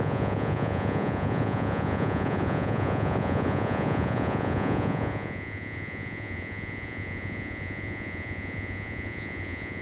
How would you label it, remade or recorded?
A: remade